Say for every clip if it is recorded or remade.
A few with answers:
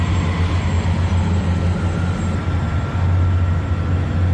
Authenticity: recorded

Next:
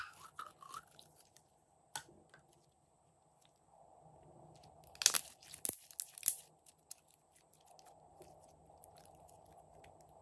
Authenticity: recorded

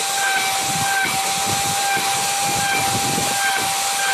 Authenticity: recorded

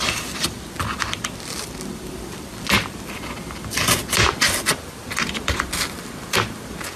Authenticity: remade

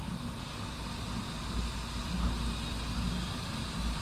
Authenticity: recorded